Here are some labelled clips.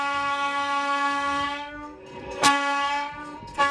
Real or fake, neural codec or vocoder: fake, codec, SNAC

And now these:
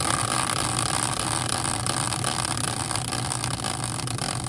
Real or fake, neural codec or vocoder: real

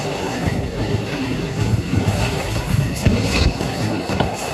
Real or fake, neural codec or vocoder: fake, codec, SNAC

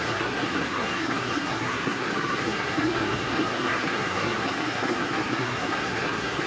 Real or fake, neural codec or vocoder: fake, codec, SNAC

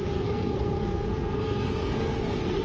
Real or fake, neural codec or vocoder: fake, codec, SNAC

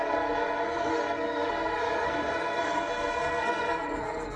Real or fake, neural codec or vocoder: fake, codec, SNAC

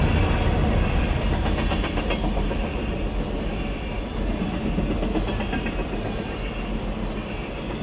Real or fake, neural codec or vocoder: real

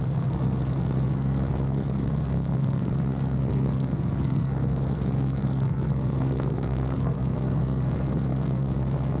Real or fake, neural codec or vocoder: fake, codec, SNAC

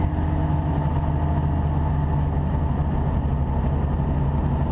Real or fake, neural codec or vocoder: real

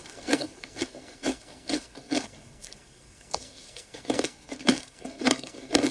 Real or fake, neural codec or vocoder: fake, codec, SNAC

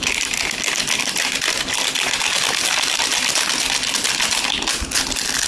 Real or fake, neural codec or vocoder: real